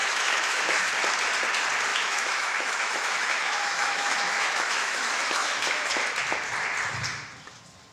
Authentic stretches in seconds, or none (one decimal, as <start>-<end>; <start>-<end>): 0.9-1.9; 5.9-7.9